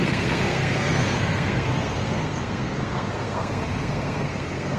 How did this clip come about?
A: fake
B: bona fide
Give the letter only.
A